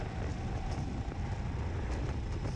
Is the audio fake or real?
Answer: real